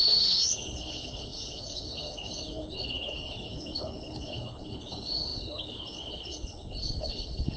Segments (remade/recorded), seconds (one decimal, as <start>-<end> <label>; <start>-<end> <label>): 0.0-7.6 remade

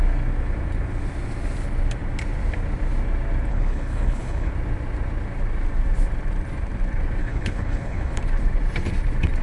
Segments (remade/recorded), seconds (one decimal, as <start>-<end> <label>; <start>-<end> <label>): 0.0-3.5 recorded; 3.5-4.5 remade; 4.5-7.2 recorded; 7.2-8.2 remade; 8.2-9.4 recorded

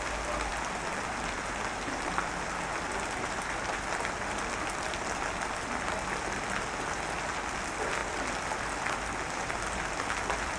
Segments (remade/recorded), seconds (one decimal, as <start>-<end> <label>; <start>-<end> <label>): 0.0-10.6 recorded

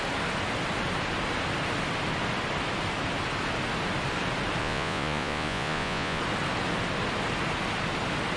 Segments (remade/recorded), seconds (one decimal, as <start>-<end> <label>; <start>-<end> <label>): 0.0-4.6 recorded; 4.6-6.2 remade; 6.2-8.4 recorded

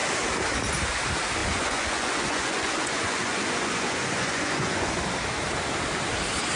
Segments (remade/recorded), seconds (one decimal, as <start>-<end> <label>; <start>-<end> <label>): 0.0-1.4 recorded; 1.4-5.0 remade; 5.0-6.6 recorded

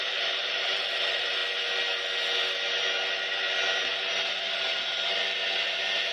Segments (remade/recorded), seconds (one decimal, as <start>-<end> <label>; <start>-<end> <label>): 0.0-1.4 remade; 1.4-4.1 recorded; 4.1-5.2 remade; 5.2-6.1 recorded

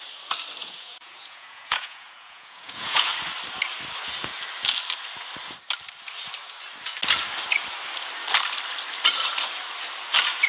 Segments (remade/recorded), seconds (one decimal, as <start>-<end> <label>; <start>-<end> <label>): 0.0-0.6 recorded; 0.6-3.1 remade; 3.1-10.5 recorded

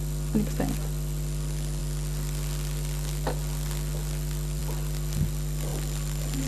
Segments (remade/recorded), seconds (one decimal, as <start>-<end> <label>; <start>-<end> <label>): 0.0-6.5 recorded